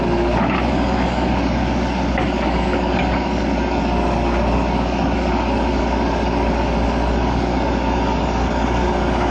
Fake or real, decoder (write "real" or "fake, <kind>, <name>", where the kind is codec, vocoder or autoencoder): fake, codec, DAC